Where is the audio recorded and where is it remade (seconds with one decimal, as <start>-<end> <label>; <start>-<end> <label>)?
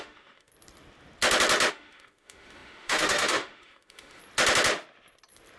0.0-0.5 remade; 0.5-1.7 recorded; 1.7-4.2 remade; 4.2-5.6 recorded